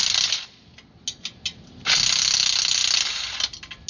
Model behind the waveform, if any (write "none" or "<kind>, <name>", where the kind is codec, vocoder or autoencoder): none